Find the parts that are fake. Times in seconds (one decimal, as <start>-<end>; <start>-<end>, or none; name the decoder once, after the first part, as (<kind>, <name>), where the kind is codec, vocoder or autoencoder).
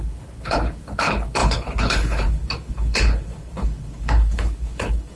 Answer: 0.0-5.2 (codec, HILCodec)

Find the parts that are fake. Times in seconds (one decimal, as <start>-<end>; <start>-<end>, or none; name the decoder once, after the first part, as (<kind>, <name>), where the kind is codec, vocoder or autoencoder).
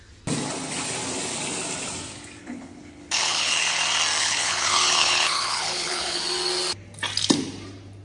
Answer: 2.4-3.8 (codec, HILCodec); 4.2-6.2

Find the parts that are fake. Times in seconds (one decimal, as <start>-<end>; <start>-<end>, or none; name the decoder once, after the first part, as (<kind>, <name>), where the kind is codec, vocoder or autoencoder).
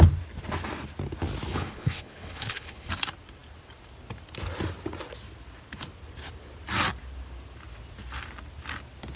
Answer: 1.5-2.9 (codec, HILCodec)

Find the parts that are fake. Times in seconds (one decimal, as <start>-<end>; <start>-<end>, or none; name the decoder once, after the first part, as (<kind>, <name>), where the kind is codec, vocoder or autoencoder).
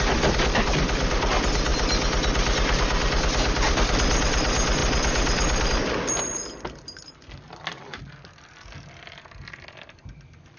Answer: none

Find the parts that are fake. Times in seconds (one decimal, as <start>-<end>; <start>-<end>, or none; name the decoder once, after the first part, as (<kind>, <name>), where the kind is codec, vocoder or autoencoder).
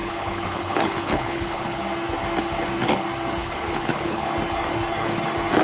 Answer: 0.0-1.8 (codec, HILCodec); 3.4-4.3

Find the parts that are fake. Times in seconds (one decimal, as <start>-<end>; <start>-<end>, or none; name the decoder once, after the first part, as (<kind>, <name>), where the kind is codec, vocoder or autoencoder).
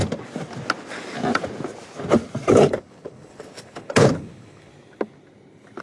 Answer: 2.5-4.7 (codec, HILCodec)